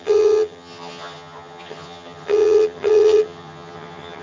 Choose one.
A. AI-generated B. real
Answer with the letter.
A